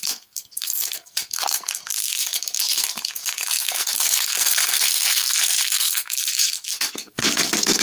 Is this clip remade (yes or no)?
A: yes